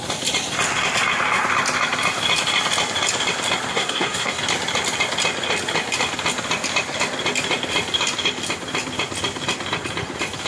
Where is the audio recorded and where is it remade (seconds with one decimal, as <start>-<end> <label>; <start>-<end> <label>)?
0.0-3.7 recorded; 3.7-4.4 remade; 4.4-10.5 recorded